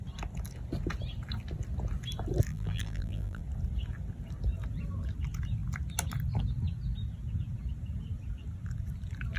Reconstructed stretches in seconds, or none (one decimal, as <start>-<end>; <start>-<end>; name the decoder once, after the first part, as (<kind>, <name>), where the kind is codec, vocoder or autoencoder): 2.5-3.4 (vocoder, BigVGAN v2)

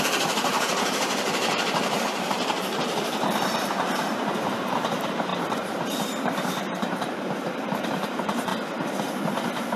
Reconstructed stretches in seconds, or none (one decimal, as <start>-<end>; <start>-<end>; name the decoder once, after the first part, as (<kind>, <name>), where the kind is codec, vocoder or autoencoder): 0.0-8.5 (vocoder, BigVGAN v2)

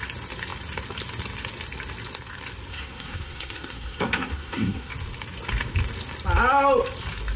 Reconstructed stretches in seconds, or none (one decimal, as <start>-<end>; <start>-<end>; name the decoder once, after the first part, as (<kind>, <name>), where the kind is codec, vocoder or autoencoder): 2.7-4.9 (codec, SNAC)

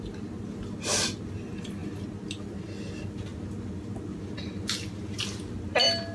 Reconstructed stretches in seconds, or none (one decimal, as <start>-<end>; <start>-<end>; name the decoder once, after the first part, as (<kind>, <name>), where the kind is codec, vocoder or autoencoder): none

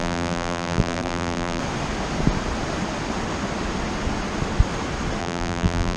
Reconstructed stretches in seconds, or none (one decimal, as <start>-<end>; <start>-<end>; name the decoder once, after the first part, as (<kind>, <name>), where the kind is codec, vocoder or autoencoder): 0.0-1.6 (vocoder, BigVGAN v2); 5.2-6.0

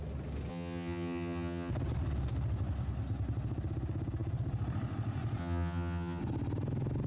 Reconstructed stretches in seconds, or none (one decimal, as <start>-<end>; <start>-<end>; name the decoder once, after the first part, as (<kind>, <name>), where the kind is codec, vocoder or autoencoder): 0.5-1.7 (vocoder, HiFi-GAN); 5.4-6.2